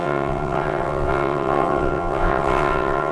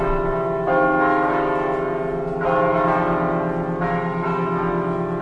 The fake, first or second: first